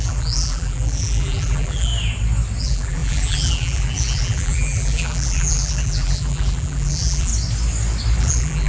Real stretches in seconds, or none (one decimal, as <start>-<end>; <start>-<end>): 1.9-2.6; 7.3-8.2